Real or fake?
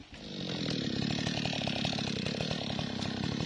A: real